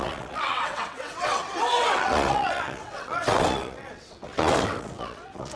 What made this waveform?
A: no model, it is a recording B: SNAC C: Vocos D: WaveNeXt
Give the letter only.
D